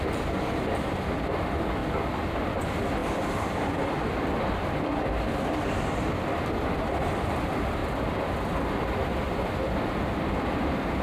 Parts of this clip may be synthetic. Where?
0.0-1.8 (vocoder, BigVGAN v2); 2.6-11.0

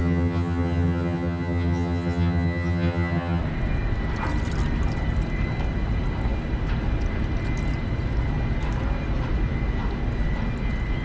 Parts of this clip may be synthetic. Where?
0.0-3.4 (vocoder, HiFi-GAN)

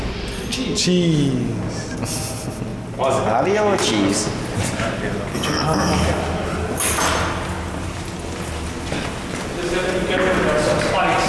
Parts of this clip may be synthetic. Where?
none